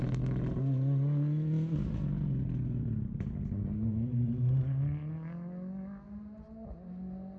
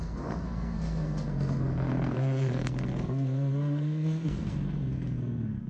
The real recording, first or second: first